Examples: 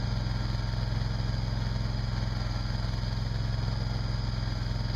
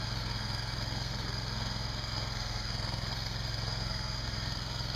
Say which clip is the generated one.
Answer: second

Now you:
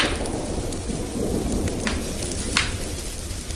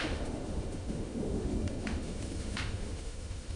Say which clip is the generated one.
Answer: second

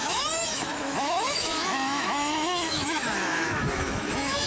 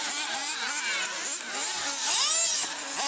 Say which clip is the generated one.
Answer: first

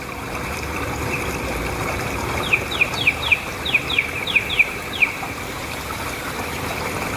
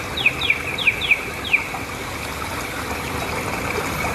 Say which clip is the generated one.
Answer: first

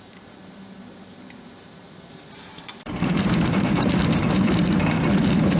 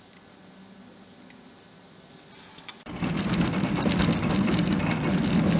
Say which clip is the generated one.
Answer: first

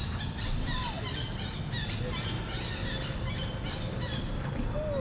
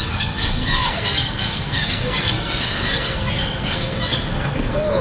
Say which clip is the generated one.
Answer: second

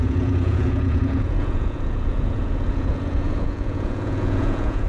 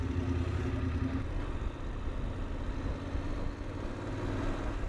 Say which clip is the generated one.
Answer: first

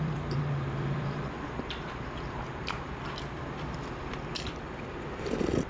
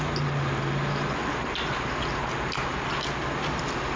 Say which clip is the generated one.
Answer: first